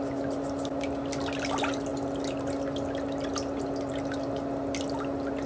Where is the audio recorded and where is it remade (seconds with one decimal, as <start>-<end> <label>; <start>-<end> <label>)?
0.0-5.5 recorded